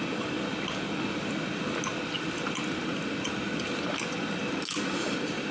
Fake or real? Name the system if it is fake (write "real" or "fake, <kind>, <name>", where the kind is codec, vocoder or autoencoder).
real